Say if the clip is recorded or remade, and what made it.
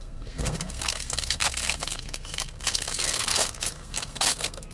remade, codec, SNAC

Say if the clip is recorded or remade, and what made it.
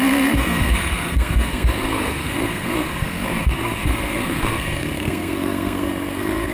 remade, codec, SNAC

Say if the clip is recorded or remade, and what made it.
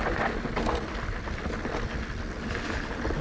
recorded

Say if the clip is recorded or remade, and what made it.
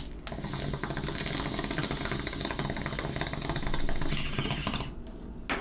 recorded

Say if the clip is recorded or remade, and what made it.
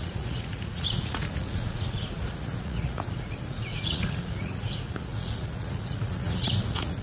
remade, vocoder, Vocos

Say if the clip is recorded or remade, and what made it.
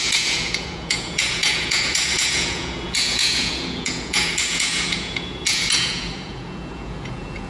remade, vocoder, Vocos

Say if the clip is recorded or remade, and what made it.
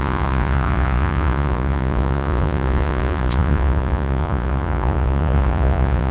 remade, vocoder, Vocos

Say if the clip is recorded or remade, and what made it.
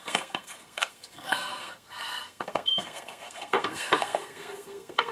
remade, codec, SNAC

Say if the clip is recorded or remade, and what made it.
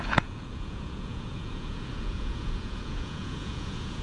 remade, vocoder, Vocos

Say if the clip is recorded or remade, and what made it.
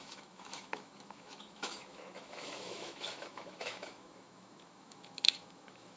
remade, autoencoder, DAC-VAE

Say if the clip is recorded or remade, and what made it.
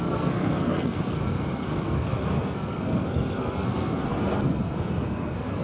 remade, codec, SNAC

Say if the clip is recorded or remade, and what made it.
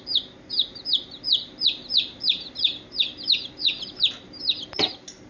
recorded